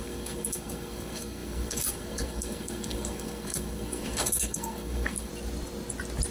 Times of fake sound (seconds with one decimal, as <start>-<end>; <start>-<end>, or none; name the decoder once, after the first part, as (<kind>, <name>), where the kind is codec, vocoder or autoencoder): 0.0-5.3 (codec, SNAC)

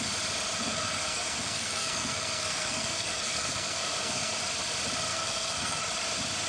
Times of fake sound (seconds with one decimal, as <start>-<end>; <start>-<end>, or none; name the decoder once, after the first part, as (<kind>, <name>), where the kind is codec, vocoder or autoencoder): 0.6-4.3 (codec, SNAC); 5.1-5.8

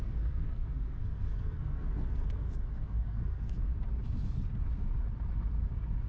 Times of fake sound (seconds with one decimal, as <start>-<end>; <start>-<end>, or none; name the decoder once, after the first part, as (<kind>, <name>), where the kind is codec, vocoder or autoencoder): 0.0-3.7 (codec, SNAC)

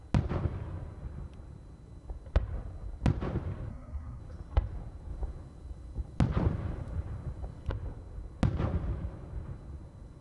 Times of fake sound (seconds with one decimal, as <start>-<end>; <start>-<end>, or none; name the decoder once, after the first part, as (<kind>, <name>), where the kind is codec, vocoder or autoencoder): 3.7-4.2 (codec, SNAC)

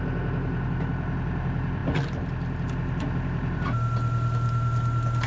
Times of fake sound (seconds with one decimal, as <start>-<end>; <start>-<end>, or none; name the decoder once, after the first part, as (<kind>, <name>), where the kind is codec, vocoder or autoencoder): none

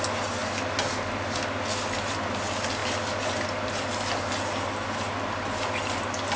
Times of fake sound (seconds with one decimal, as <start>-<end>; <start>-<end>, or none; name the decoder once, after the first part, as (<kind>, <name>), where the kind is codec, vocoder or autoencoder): none

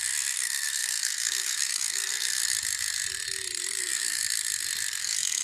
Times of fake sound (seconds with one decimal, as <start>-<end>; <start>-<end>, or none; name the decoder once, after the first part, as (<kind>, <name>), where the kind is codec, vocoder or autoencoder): 0.0-2.4 (codec, SNAC); 3.8-4.2; 5.0-5.4